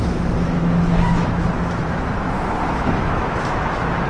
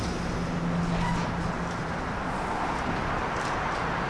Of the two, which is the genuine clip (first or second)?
second